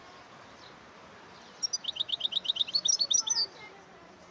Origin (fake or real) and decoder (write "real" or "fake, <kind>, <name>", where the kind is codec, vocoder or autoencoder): real